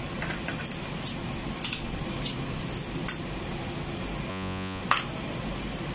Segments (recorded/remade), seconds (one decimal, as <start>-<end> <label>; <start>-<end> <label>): 0.0-4.3 recorded; 4.3-4.8 remade; 4.8-5.9 recorded